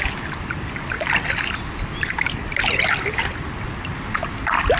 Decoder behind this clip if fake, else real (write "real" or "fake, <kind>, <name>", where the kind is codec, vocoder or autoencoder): real